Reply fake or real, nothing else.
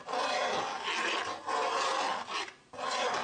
real